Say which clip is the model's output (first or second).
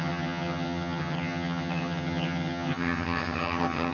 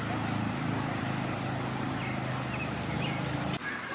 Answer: first